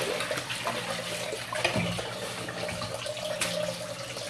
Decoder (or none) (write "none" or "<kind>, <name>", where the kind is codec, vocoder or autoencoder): none